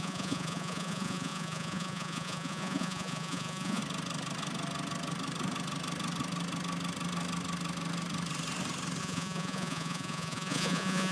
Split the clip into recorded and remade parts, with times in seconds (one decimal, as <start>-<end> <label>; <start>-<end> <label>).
0.0-3.8 remade; 3.8-9.0 recorded; 9.0-11.1 remade